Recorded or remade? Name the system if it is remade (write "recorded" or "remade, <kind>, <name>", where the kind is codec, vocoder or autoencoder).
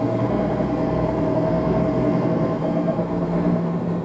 remade, codec, SNAC